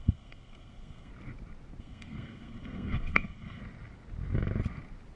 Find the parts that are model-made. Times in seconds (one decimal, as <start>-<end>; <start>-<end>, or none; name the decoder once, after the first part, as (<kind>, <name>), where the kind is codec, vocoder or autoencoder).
0.0-1.1 (codec, SNAC); 1.8-3.6